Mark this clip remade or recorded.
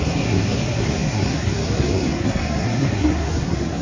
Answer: remade